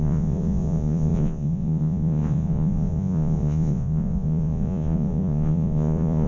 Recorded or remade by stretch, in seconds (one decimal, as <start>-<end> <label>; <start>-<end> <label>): 0.0-6.3 remade